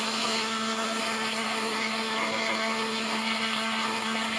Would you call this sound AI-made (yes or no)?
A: yes